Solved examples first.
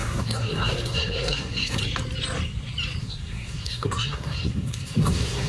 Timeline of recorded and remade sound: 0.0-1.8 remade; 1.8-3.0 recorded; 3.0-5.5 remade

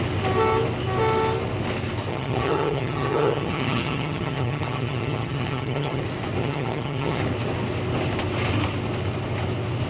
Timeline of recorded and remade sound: 0.0-2.1 recorded; 2.1-6.0 remade; 6.0-6.4 recorded; 6.4-7.2 remade; 7.2-9.9 recorded

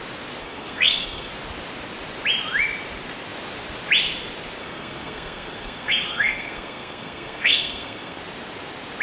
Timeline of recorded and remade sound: 0.0-0.4 recorded; 0.4-1.3 remade; 1.3-4.6 recorded; 4.6-8.2 remade; 8.2-9.0 recorded

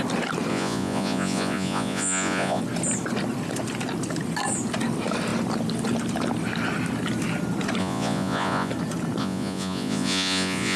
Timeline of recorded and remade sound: 0.0-0.5 recorded; 0.5-2.6 remade; 2.6-7.8 recorded; 7.8-8.7 remade; 8.7-9.2 recorded; 9.2-10.8 remade

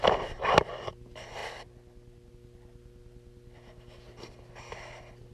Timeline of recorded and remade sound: 0.0-5.3 recorded